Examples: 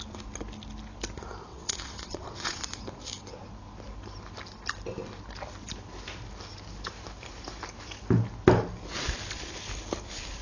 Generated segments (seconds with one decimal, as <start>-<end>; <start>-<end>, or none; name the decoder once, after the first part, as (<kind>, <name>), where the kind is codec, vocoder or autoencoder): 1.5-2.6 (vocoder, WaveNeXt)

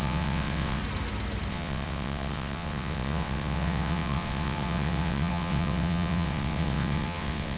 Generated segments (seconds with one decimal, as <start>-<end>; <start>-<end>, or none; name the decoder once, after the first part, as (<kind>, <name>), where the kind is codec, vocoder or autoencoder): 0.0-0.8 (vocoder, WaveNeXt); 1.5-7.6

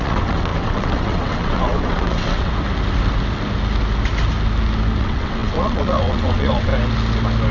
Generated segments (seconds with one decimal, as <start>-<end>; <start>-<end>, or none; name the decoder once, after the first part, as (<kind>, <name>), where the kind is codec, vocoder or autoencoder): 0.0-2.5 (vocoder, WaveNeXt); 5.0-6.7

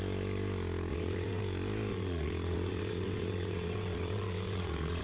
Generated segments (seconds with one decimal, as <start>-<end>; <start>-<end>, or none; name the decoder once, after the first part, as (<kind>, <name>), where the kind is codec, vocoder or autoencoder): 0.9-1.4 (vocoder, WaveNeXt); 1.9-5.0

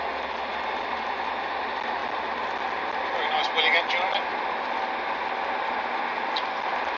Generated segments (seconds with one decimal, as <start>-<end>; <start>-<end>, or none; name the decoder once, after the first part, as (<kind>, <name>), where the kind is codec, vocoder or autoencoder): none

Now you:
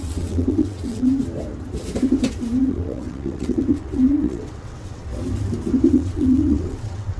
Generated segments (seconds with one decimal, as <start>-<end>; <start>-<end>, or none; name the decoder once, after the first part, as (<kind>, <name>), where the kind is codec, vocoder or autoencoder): 0.0-1.1 (vocoder, WaveNeXt); 2.6-5.1; 5.9-7.2

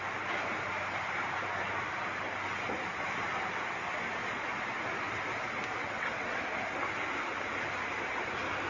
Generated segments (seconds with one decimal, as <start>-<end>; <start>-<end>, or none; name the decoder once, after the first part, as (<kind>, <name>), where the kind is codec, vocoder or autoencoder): 5.8-6.4 (vocoder, WaveNeXt)

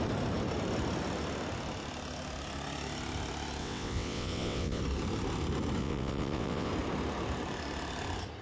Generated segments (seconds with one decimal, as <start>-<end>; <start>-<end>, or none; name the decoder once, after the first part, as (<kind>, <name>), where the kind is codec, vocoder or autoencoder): 3.6-4.8 (vocoder, WaveNeXt); 5.8-6.7